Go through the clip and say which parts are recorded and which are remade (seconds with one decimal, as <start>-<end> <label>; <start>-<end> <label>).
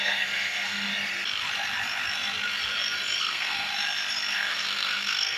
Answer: 0.0-0.9 remade; 0.9-3.2 recorded; 3.2-3.7 remade; 3.7-4.3 recorded; 4.3-5.4 remade